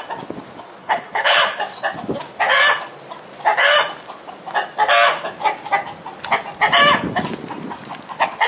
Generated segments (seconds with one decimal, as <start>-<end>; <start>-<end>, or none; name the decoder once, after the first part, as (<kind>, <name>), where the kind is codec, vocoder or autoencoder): 0.8-1.4 (codec, HILCodec)

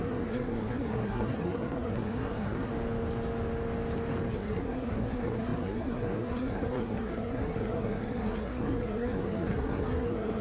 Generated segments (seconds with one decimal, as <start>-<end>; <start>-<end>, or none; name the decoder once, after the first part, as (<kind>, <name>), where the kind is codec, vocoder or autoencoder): 0.0-2.7 (codec, SNAC); 4.3-10.4

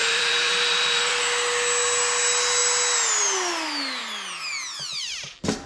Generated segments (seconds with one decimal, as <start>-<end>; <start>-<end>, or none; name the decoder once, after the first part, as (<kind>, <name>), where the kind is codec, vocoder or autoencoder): 0.0-1.2 (vocoder, BigVGAN v2)

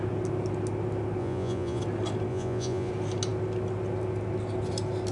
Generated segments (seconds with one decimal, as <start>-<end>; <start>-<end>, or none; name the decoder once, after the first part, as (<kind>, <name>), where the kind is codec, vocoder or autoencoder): 1.2-1.8 (vocoder, Vocos); 2.3-2.9

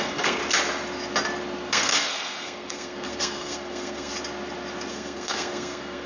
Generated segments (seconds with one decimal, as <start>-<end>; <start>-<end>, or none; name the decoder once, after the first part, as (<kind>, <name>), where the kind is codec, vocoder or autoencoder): 0.0-0.4 (codec, SNAC); 1.7-4.1; 4.9-6.1

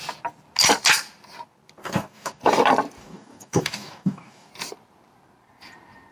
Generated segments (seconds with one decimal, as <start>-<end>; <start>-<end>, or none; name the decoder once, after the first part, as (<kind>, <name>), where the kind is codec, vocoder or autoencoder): 1.8-2.4 (codec, DAC); 3.0-4.5

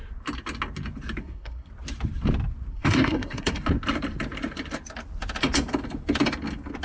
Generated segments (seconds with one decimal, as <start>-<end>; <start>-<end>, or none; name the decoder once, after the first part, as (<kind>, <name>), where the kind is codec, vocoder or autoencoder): 1.2-1.7 (codec, SNAC); 2.7-3.6